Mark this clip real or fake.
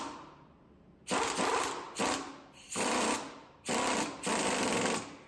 real